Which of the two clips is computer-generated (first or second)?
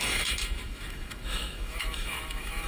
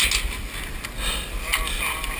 first